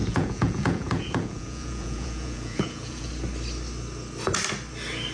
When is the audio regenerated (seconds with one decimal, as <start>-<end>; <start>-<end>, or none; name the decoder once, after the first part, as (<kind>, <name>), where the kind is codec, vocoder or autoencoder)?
0.0-3.1 (vocoder, Vocos)